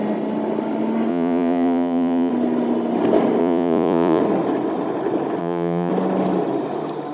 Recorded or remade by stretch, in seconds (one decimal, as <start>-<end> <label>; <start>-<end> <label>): 0.0-1.1 recorded; 1.1-2.3 remade; 2.3-3.4 recorded; 3.4-4.2 remade; 4.2-5.4 recorded; 5.4-5.9 remade; 5.9-7.1 recorded